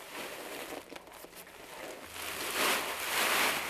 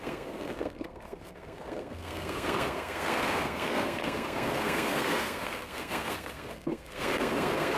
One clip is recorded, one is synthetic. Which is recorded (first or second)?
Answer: first